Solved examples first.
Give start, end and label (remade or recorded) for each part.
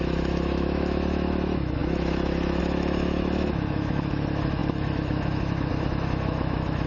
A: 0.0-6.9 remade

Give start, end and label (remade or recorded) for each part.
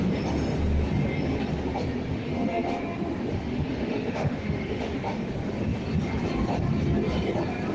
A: 0.0-2.1 recorded; 2.1-2.8 remade; 2.8-3.3 recorded; 3.3-5.3 remade; 5.3-7.7 recorded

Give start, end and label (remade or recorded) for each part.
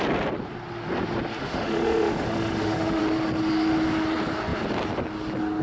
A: 0.0-1.4 recorded; 1.4-3.0 remade; 3.0-5.6 recorded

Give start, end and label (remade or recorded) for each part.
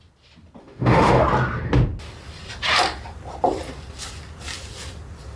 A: 0.0-0.6 recorded; 0.6-1.2 remade; 1.2-5.4 recorded